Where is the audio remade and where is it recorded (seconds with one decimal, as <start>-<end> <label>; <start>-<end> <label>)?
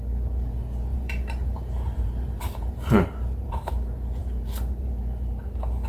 0.0-0.9 recorded; 0.9-3.7 remade; 3.7-4.2 recorded; 4.2-4.9 remade; 4.9-5.9 recorded